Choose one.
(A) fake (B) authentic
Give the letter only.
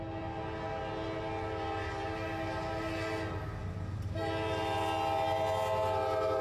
B